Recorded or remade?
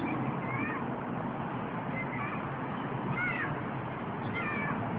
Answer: recorded